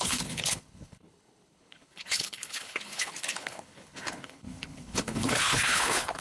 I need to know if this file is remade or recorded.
remade